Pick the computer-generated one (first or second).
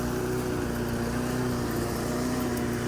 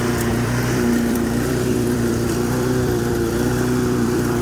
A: second